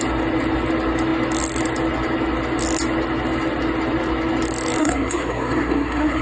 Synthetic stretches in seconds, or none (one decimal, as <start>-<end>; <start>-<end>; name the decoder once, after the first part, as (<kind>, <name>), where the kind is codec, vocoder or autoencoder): 4.8-6.2 (codec, SNAC)